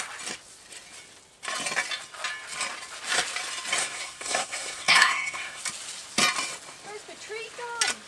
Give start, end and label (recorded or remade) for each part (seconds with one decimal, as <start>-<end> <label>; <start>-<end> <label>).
0.0-3.8 recorded; 3.8-5.6 remade; 5.6-8.1 recorded